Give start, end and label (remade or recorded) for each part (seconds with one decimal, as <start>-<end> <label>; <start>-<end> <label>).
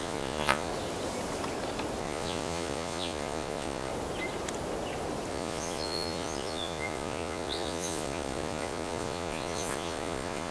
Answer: 0.0-0.7 remade; 0.7-2.0 recorded; 2.0-3.9 remade; 3.9-5.3 recorded; 5.3-10.5 remade